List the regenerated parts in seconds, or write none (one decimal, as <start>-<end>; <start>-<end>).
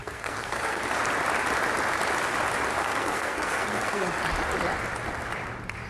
0.0-0.8; 2.8-4.2